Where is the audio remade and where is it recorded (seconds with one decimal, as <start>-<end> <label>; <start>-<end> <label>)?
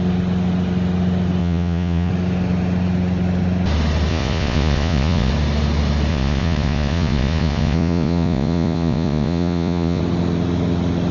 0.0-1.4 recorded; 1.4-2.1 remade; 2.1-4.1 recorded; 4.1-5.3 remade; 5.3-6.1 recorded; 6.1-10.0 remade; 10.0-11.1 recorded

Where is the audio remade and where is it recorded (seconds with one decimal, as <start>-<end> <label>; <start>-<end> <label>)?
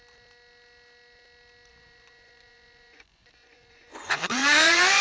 0.0-1.7 recorded; 1.7-5.0 remade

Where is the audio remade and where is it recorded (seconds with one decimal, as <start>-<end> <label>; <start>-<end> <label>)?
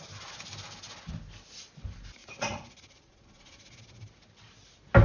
0.0-2.2 recorded; 2.2-3.8 remade; 3.8-5.0 recorded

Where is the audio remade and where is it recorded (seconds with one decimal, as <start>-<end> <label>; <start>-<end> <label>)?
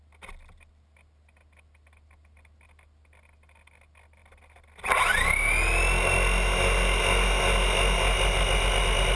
0.0-9.2 recorded